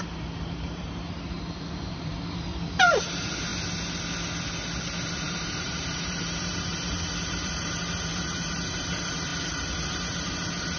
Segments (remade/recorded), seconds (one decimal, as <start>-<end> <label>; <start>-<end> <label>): 0.0-2.1 remade; 2.1-2.8 recorded; 2.8-3.5 remade; 3.5-5.0 recorded; 5.0-6.7 remade; 6.7-7.3 recorded; 7.3-10.8 remade